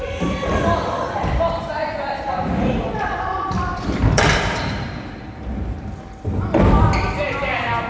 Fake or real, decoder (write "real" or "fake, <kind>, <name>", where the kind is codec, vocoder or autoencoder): fake, vocoder, BigVGAN v2